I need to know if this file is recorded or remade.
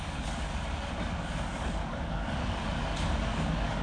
remade